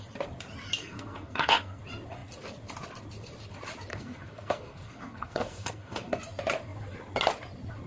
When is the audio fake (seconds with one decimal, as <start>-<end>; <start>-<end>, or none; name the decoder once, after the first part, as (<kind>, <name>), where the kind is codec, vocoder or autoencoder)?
0.8-1.8 (codec, SNAC); 3.9-6.2